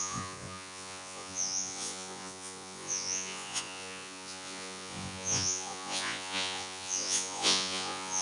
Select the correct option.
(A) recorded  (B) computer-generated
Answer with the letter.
B